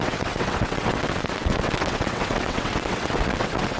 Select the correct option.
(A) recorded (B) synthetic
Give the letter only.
B